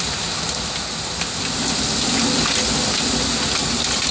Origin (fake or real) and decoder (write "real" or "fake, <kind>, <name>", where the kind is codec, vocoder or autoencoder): real